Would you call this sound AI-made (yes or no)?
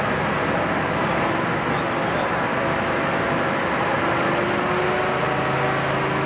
no